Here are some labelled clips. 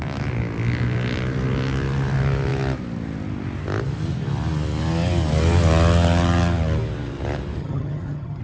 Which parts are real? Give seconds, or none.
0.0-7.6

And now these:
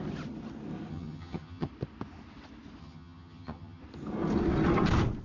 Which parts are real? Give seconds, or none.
0.0-0.9; 1.7-2.8; 3.8-5.2

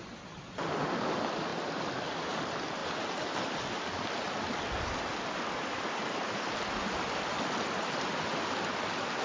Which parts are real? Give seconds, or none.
0.0-9.2

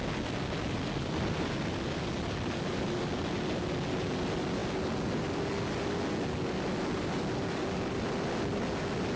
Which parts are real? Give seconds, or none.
0.0-9.2

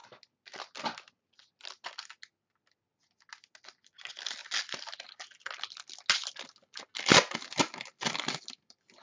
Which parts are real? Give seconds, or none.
0.0-9.0

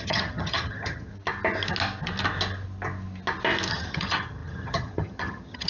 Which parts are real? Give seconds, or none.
1.1-3.7

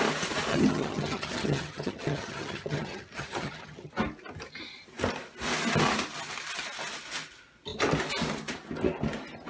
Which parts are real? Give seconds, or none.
0.0-0.5; 3.9-9.5